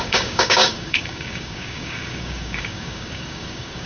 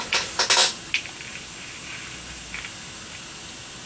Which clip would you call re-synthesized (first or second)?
first